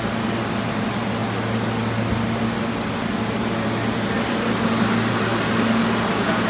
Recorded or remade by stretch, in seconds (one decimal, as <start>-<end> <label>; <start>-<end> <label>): 0.0-6.5 recorded

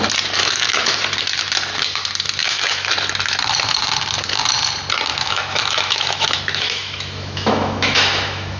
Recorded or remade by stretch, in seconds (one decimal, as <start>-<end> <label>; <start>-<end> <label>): 0.0-0.4 recorded; 0.4-1.0 remade; 1.0-2.4 recorded; 2.4-2.9 remade; 2.9-5.1 recorded; 5.1-8.6 remade

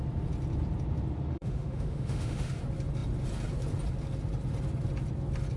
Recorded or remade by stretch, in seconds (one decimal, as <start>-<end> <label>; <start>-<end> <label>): 0.0-1.3 recorded; 1.3-2.6 remade; 2.6-5.6 recorded

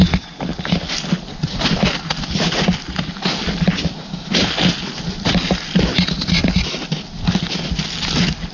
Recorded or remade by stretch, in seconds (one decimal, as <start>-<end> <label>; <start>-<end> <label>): 0.0-8.5 recorded

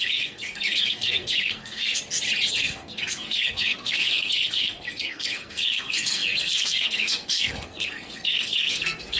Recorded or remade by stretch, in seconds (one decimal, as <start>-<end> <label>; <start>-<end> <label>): 0.0-2.0 remade; 2.0-2.5 recorded; 2.5-9.2 remade